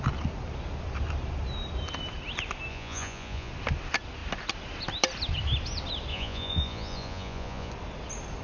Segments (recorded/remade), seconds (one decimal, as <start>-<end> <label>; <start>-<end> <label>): 0.0-2.7 recorded; 2.7-3.5 remade; 3.5-6.1 recorded; 6.1-7.7 remade; 7.7-8.4 recorded